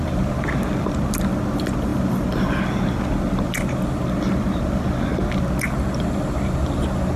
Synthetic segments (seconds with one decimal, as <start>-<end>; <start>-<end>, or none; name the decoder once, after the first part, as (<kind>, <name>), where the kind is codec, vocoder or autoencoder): none